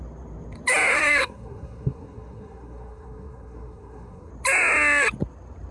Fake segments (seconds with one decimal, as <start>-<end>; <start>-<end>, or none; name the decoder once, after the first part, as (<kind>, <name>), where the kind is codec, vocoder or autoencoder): 0.9-4.3 (codec, SNAC)

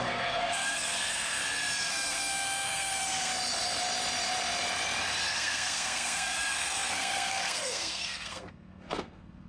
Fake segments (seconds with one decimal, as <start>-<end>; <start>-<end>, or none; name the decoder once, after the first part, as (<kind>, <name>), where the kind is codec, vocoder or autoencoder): 0.0-1.4 (codec, SNAC); 1.9-3.3; 5.3-9.5